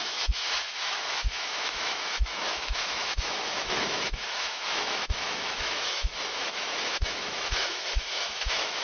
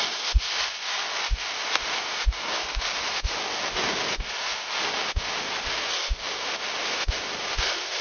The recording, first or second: second